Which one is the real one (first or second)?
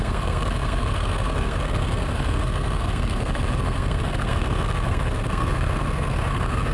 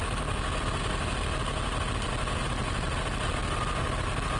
second